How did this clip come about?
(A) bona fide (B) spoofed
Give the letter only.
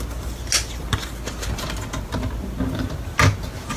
A